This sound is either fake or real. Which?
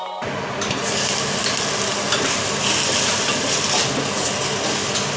real